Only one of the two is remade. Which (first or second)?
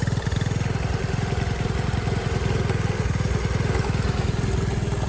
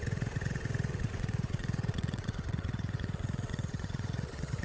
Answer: second